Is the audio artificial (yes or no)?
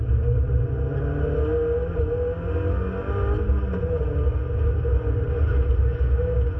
no